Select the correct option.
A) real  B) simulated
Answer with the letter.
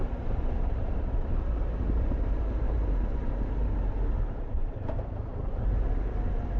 B